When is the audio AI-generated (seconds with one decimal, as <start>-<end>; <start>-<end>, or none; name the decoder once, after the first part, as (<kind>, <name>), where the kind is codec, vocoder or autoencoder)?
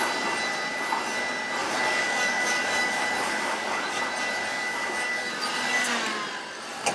1.6-4.0 (codec, DAC); 4.5-5.3